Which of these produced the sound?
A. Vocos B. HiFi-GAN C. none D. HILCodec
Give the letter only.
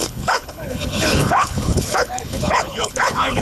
D